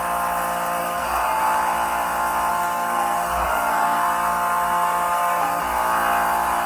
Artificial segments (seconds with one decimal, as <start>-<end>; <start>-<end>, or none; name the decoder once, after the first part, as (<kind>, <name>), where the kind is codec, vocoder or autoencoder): 0.8-1.4 (codec, SNAC); 2.5-5.6